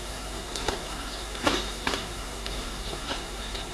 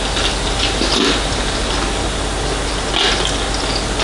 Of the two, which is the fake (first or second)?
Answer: first